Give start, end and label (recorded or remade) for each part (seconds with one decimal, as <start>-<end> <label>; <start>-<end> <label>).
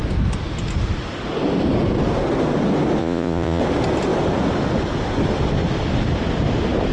0.0-3.0 recorded; 3.0-3.6 remade; 3.6-6.9 recorded